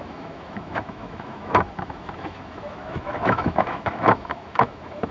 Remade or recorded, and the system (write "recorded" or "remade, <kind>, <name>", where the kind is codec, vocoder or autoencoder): remade, autoencoder, DAC-VAE